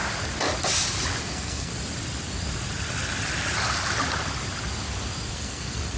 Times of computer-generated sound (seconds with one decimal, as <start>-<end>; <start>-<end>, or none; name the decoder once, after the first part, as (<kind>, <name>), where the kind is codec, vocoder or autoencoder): 1.2-1.7 (codec, SNAC); 5.3-6.0